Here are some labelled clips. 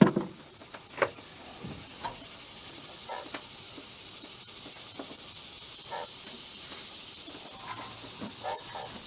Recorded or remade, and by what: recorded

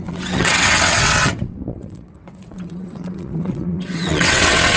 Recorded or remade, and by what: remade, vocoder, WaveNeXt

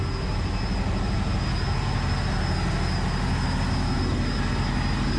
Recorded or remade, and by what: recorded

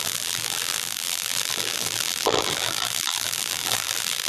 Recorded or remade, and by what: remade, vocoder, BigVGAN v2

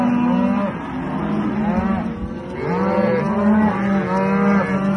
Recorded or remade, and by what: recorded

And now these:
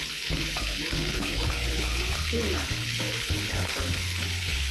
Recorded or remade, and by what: remade, codec, HILCodec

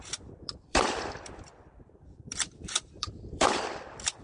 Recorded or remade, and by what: remade, vocoder, BigVGAN v2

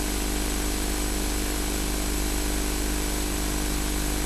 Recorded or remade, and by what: remade, vocoder, BigVGAN v2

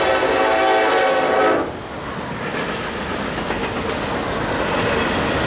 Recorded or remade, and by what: recorded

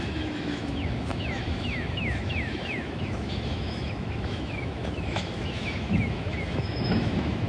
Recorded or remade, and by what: remade, autoencoder, DAC-VAE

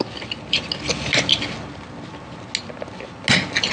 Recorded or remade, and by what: recorded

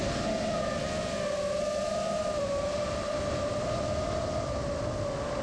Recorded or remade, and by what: recorded